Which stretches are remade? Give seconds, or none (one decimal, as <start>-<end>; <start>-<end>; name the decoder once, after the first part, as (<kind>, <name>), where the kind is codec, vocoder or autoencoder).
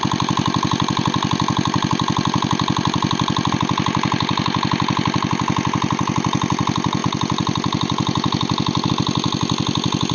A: none